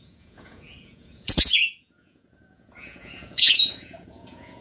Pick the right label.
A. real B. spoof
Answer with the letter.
B